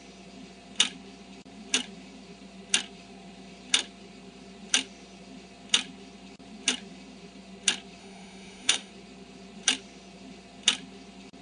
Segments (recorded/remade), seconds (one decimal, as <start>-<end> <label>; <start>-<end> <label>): 0.0-8.0 recorded; 8.0-8.9 remade; 8.9-11.4 recorded

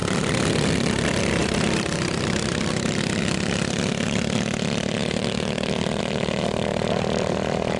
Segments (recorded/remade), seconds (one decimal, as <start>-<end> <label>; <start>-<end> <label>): 0.0-0.7 remade; 0.7-1.4 recorded; 1.4-3.0 remade; 3.0-5.0 recorded; 5.0-6.0 remade; 6.0-6.7 recorded; 6.7-7.8 remade

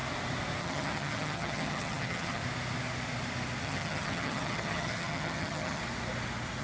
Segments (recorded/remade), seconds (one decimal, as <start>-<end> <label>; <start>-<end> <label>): 0.0-0.6 recorded; 0.6-2.4 remade; 2.4-3.6 recorded; 3.6-5.8 remade; 5.8-6.6 recorded